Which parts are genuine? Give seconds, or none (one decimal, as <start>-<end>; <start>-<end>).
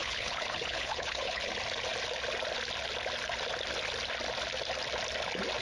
1.5-5.6